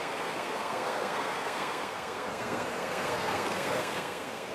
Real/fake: fake